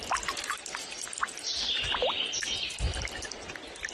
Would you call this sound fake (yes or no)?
yes